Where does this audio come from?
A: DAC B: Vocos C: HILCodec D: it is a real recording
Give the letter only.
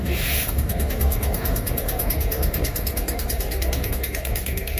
A